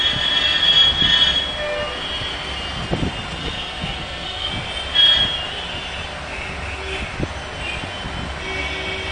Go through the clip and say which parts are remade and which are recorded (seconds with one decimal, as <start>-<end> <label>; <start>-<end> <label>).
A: 0.0-3.4 recorded; 3.4-4.5 remade; 4.5-9.1 recorded